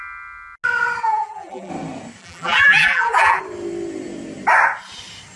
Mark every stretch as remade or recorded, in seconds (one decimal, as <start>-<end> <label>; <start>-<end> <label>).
0.0-1.0 recorded; 1.0-1.7 remade; 1.7-2.2 recorded; 2.2-3.4 remade; 3.4-5.4 recorded